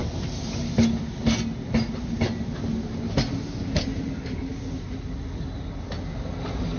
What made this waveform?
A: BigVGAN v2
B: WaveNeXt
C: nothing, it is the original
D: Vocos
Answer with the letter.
C